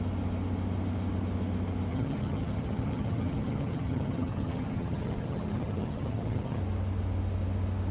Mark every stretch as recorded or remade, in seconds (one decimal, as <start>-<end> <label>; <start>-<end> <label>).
0.0-1.9 recorded; 1.9-6.6 remade; 6.6-7.9 recorded